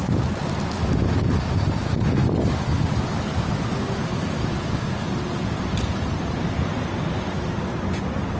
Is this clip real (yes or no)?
yes